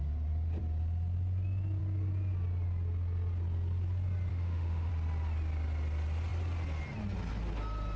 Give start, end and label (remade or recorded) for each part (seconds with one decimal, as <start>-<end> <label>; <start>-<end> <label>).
0.0-4.3 recorded; 4.3-4.9 remade; 4.9-8.0 recorded